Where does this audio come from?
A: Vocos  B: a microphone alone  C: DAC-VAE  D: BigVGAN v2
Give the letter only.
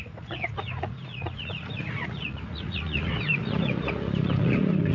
A